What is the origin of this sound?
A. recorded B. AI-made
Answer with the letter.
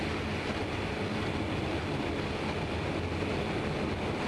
A